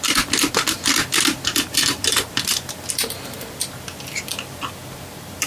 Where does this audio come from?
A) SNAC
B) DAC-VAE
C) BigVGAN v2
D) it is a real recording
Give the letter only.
D